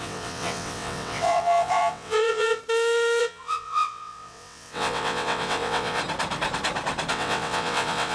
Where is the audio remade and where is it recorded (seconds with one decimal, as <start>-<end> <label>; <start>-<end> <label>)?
0.0-2.6 remade; 2.6-3.2 recorded; 3.2-6.0 remade; 6.0-7.1 recorded; 7.1-8.1 remade